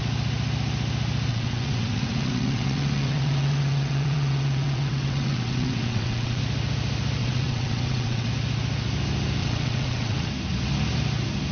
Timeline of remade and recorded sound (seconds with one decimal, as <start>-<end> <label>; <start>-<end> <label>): 0.0-1.3 recorded; 1.3-6.4 remade; 6.4-7.2 recorded; 7.2-8.3 remade; 8.3-9.4 recorded; 9.4-10.3 remade; 10.3-11.5 recorded